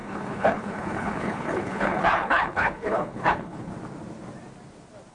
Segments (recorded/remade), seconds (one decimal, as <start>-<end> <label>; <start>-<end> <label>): 0.0-3.7 remade; 3.7-5.1 recorded

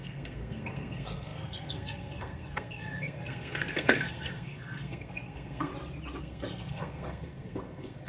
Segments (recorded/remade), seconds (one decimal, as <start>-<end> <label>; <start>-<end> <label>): 0.0-5.7 remade; 5.7-6.2 recorded; 6.2-8.1 remade

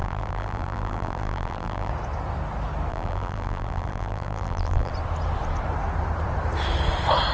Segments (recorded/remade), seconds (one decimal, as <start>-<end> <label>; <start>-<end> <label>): 0.0-1.9 remade; 1.9-2.9 recorded; 2.9-4.9 remade; 4.9-7.3 recorded

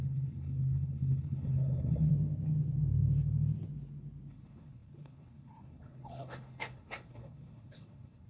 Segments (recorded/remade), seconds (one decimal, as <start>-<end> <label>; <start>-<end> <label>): 0.0-2.1 remade; 2.1-4.3 recorded; 4.3-8.3 remade

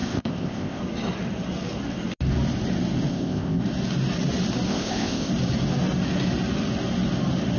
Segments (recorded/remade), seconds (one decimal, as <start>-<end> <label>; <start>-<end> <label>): 0.0-0.8 remade; 0.8-3.1 recorded; 3.1-3.6 remade; 3.6-4.7 recorded; 4.7-5.3 remade; 5.3-7.6 recorded

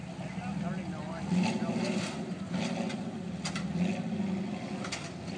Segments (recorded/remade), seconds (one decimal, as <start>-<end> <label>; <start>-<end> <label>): 0.0-5.4 recorded